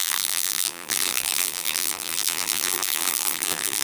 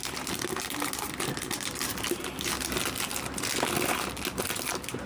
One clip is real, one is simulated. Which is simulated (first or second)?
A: first